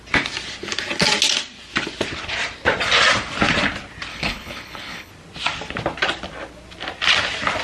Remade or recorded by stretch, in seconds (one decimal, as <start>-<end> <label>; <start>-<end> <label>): 0.0-4.1 recorded; 4.1-5.1 remade; 5.1-7.6 recorded